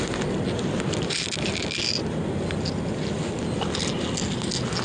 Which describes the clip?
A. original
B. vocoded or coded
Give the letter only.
A